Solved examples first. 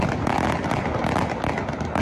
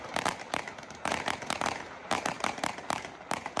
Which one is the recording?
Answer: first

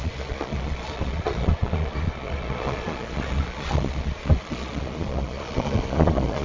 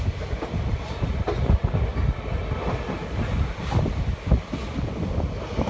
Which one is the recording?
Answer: second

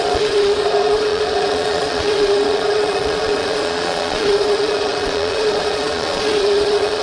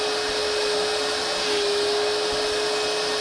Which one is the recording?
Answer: second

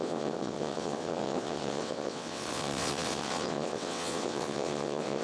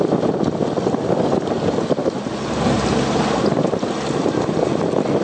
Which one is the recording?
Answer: second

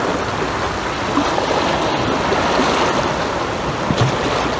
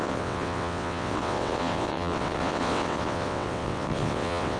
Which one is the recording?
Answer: first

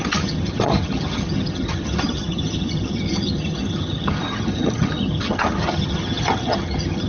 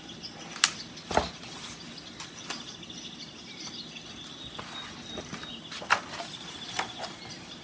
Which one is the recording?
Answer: second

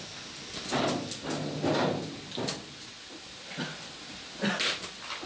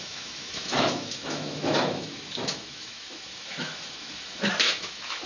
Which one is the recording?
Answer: first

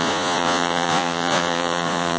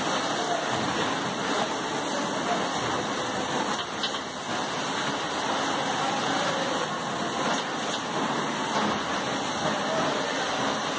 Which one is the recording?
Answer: second